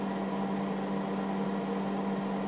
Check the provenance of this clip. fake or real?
real